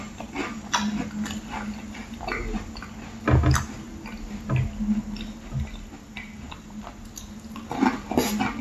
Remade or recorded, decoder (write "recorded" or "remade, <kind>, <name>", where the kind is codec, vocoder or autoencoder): recorded